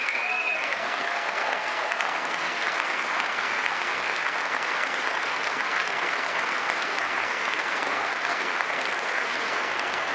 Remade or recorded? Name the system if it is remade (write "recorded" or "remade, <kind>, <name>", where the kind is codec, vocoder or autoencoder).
remade, codec, SNAC